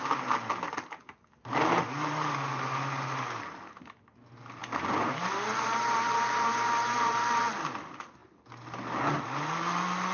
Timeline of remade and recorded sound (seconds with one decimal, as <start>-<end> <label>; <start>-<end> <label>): 0.0-10.1 recorded